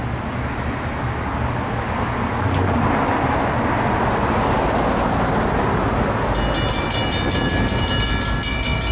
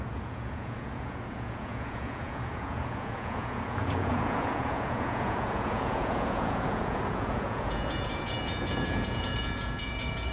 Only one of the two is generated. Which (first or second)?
second